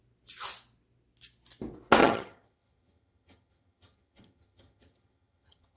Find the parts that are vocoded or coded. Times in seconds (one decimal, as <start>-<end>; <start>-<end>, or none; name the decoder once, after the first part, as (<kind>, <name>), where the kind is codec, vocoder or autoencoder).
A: 2.0-5.8 (vocoder, HiFi-GAN)

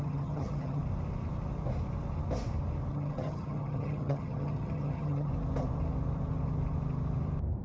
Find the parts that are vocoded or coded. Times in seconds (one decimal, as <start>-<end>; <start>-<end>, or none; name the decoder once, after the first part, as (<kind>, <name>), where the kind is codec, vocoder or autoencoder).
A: 0.0-0.8 (vocoder, HiFi-GAN); 2.9-5.3

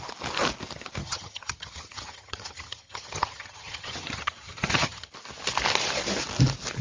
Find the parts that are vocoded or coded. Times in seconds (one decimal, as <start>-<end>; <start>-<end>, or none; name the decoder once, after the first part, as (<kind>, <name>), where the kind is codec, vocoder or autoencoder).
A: 1.0-5.1 (vocoder, HiFi-GAN)